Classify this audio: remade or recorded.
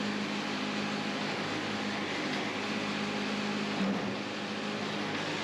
recorded